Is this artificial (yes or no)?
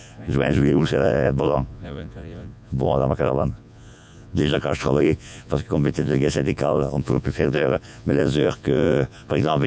yes